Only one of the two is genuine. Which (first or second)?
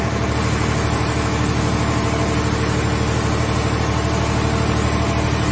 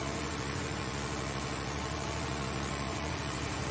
first